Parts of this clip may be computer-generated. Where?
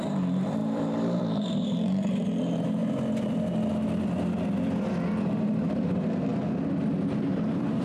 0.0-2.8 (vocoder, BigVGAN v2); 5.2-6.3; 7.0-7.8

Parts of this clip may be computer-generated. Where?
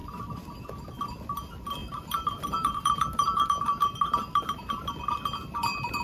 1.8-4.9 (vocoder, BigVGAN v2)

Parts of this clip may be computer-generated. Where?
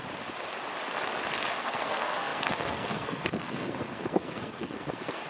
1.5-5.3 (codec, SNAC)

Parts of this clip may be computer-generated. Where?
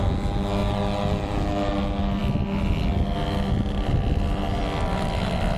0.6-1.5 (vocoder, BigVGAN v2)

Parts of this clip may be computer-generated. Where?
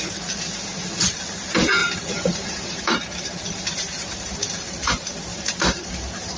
1.8-4.3 (vocoder, BigVGAN v2); 5.3-5.9